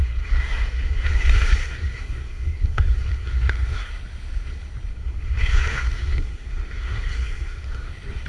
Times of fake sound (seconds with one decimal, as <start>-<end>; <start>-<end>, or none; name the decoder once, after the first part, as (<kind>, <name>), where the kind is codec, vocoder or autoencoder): 0.0-3.9 (codec, SNAC); 4.9-7.9